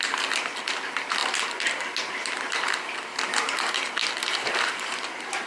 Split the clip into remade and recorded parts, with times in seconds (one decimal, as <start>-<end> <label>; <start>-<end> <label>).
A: 0.0-5.5 recorded